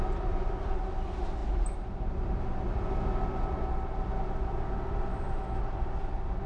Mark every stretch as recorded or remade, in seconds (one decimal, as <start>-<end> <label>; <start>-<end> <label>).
0.0-5.1 recorded; 5.1-5.6 remade; 5.6-6.5 recorded